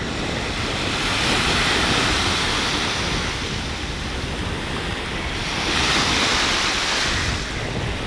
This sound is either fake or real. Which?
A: real